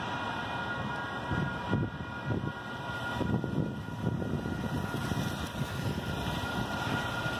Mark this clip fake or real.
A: real